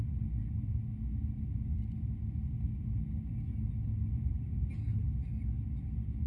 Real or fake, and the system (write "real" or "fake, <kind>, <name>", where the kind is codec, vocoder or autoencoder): real